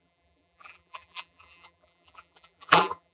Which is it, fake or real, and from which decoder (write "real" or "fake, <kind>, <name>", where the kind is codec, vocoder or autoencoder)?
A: fake, vocoder, BigVGAN v2